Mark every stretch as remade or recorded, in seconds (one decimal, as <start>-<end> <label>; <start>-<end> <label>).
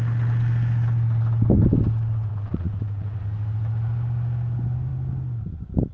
0.0-2.3 recorded; 2.3-3.2 remade; 3.2-5.9 recorded